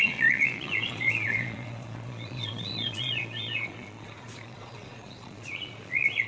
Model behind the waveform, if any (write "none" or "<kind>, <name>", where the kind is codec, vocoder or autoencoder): vocoder, Vocos